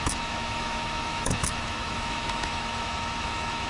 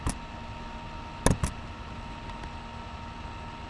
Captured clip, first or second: second